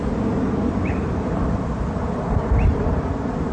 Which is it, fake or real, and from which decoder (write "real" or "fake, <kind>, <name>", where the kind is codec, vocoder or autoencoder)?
fake, vocoder, BigVGAN v2